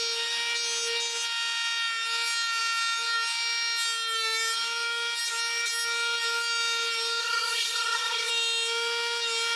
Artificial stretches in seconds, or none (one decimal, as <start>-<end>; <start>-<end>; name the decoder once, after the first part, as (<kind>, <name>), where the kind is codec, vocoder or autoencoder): 7.2-8.3 (codec, SNAC)